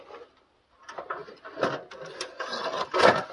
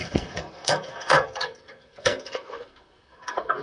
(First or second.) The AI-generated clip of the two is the second